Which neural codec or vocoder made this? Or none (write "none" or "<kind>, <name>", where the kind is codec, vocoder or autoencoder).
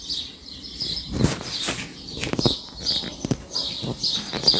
none